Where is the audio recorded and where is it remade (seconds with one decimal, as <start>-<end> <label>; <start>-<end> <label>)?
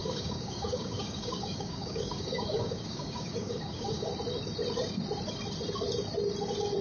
0.0-4.1 remade; 4.1-6.8 recorded